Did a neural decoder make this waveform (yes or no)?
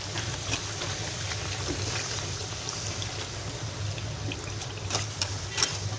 no